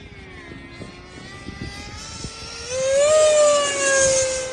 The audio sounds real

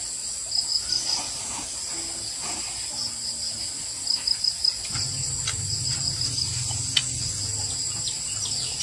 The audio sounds real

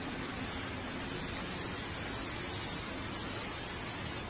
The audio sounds real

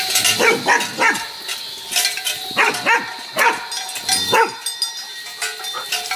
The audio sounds real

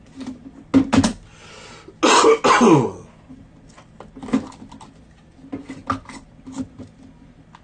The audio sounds real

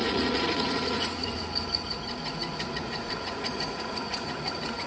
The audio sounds fake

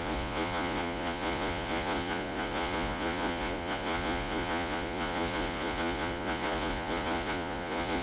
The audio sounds fake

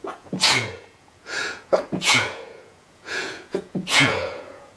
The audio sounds fake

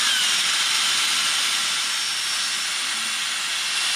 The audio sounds real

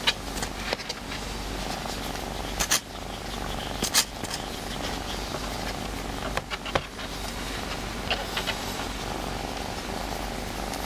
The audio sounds real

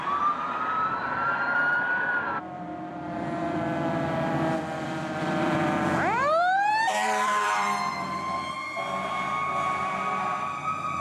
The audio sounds fake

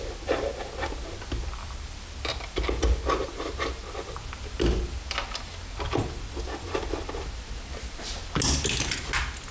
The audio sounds real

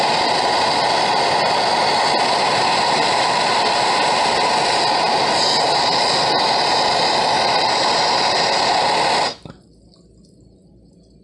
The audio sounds real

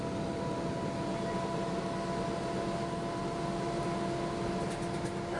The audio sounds real